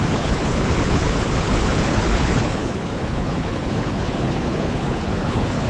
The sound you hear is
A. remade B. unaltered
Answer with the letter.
A